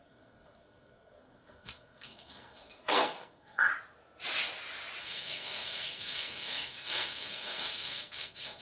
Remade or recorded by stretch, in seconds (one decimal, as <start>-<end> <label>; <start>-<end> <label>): 0.0-3.7 remade; 3.7-5.0 recorded; 5.0-8.6 remade